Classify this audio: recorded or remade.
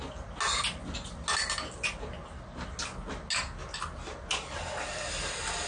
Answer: recorded